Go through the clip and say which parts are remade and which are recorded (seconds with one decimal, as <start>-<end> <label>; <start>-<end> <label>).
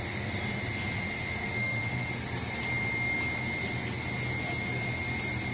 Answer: 0.0-1.6 recorded; 1.6-2.1 remade; 2.1-5.5 recorded